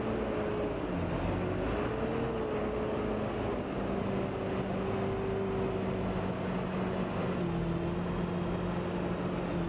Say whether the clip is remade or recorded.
recorded